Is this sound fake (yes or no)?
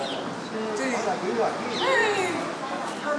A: no